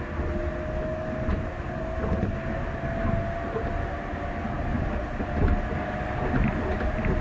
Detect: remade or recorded recorded